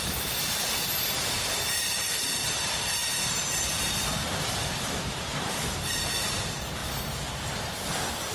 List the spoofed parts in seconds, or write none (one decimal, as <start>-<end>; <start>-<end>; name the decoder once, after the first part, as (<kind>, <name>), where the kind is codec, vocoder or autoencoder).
0.0-6.8 (vocoder, BigVGAN v2); 7.7-8.3